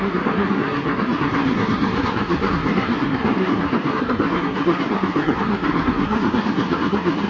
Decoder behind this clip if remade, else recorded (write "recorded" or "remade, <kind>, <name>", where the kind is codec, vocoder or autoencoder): remade, codec, SNAC